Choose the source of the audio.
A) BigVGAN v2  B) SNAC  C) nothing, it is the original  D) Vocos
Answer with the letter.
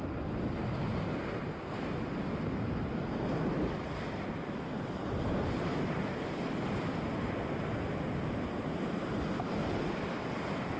A